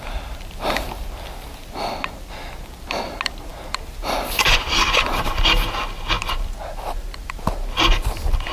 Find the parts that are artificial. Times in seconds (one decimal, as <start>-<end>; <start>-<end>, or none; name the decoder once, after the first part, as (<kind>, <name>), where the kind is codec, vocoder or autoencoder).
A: none